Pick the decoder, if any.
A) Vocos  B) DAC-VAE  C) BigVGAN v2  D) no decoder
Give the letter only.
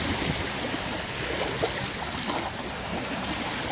D